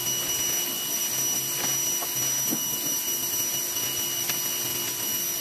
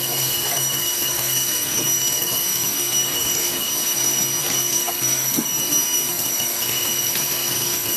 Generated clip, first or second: second